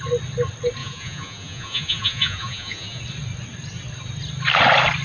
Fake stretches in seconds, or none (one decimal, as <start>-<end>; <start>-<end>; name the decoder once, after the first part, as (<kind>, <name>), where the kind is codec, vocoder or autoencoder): 0.8-3.0 (vocoder, Vocos)